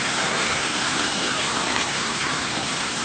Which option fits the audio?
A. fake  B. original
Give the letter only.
A